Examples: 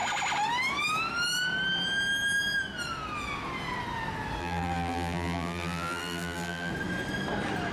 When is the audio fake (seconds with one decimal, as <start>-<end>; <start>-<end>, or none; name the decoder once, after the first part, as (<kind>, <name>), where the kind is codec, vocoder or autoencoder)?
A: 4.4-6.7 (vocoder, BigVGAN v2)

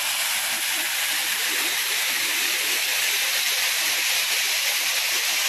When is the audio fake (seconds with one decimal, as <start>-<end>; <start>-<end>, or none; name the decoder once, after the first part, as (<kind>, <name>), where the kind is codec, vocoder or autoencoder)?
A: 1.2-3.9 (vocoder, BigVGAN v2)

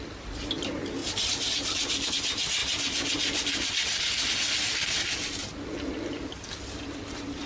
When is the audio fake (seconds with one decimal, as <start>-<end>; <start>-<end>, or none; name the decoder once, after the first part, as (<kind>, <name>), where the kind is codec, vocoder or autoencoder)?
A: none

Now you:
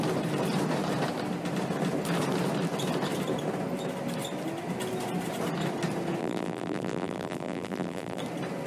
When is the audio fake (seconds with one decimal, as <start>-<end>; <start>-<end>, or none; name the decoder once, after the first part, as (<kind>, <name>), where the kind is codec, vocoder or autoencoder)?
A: 6.2-8.2 (vocoder, BigVGAN v2)

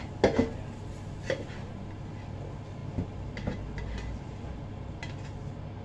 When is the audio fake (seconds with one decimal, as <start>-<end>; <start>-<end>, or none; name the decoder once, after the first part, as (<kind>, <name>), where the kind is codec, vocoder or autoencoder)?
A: none

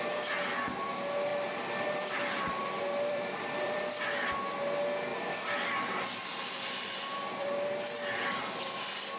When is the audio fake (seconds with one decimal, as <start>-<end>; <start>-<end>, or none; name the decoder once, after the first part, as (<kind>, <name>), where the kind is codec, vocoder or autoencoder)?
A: 1.3-4.0 (vocoder, BigVGAN v2); 5.1-7.7

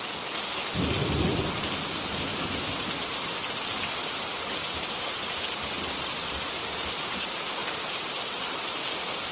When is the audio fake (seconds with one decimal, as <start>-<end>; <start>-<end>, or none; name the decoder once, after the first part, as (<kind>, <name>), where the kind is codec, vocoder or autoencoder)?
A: 2.3-6.5 (vocoder, BigVGAN v2); 7.6-8.6

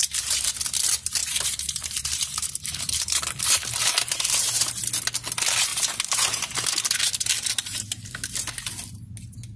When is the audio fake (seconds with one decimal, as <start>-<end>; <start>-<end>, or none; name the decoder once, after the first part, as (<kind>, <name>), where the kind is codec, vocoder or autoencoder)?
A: 0.0-0.5 (vocoder, BigVGAN v2); 1.2-4.7; 5.7-8.5